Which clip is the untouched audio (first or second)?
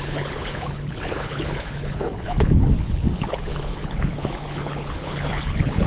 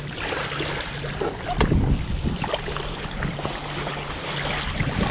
second